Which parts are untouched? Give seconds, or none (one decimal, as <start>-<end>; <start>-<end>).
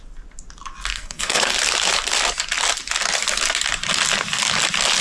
0.0-0.9; 1.5-5.0